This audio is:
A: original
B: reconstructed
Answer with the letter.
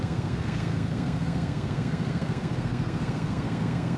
B